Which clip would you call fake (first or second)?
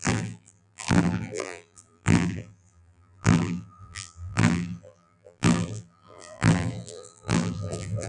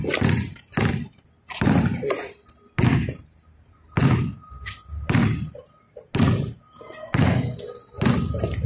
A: first